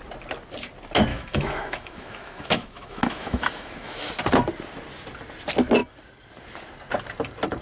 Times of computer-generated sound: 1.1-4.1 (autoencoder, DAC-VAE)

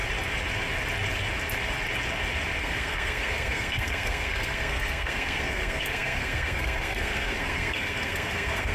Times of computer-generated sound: 2.6-8.7 (codec, SNAC)

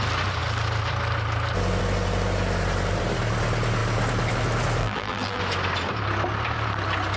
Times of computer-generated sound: 4.8-5.4 (vocoder, BigVGAN v2)

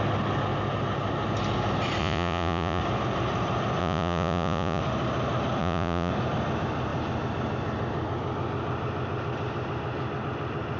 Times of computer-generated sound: 2.0-2.8 (vocoder, Vocos); 3.8-4.8; 5.6-6.1

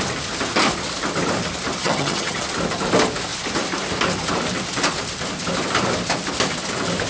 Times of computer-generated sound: 1.8-2.4 (vocoder, HiFi-GAN)

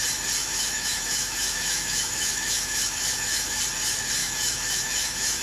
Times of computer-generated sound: 0.4-3.6 (autoencoder, DAC-VAE); 4.2-5.4

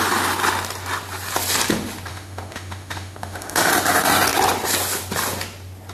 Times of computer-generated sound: 2.1-3.7 (autoencoder, DAC-VAE)